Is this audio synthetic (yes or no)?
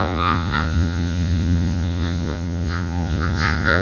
yes